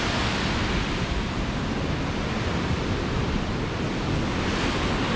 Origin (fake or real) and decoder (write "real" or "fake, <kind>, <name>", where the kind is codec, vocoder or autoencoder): real